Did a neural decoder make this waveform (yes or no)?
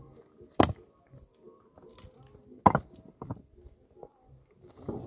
no